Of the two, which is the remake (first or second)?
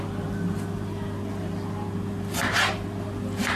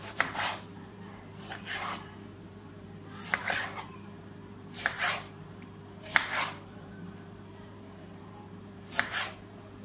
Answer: second